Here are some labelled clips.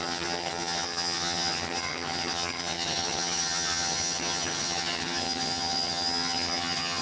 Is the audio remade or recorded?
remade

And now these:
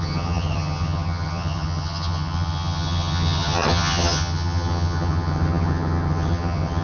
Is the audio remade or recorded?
remade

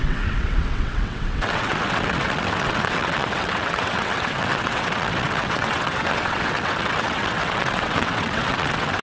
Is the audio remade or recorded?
remade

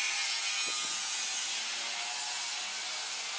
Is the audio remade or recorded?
recorded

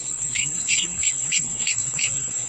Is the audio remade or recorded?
remade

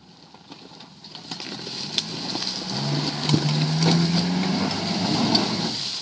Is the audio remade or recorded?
recorded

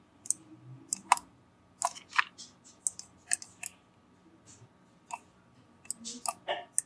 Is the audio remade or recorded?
recorded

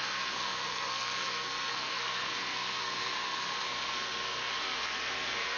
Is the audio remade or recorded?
remade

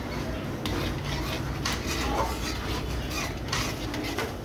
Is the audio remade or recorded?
recorded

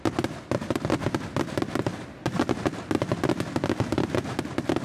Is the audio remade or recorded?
recorded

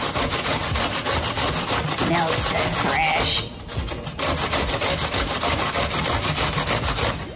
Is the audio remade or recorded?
recorded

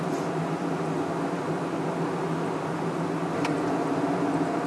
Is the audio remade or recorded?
recorded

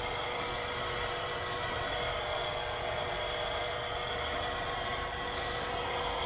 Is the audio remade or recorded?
recorded